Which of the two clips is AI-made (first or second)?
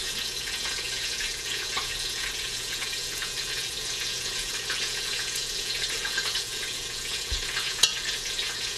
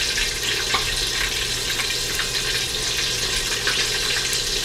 first